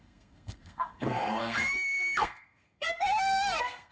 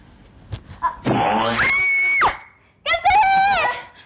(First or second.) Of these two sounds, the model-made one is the first